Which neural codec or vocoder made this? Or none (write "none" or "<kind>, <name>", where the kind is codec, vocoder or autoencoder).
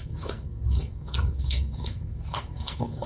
codec, SNAC